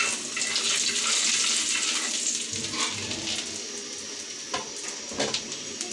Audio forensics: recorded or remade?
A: recorded